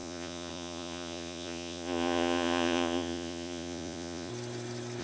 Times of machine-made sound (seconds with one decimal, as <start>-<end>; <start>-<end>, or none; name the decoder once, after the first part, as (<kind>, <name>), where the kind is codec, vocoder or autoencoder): 0.0-4.3 (vocoder, Vocos)